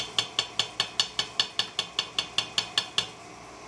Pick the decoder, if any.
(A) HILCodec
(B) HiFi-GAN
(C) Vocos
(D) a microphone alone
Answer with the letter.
D